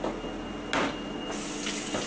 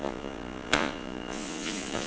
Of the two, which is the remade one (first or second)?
second